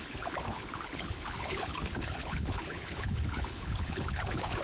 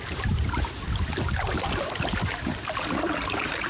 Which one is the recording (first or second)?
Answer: second